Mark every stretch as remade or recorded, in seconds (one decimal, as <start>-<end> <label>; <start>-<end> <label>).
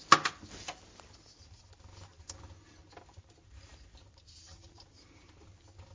0.0-5.9 recorded